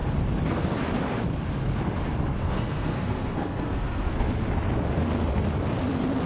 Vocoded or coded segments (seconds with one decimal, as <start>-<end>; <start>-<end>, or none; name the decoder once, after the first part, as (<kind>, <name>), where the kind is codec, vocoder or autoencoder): 2.4-4.4 (codec, SNAC)